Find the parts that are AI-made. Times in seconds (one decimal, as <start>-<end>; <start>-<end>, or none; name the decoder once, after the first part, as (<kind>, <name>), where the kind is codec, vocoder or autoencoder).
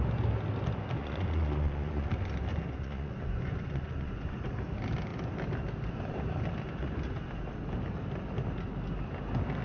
1.0-2.1 (vocoder, Vocos); 2.5-4.5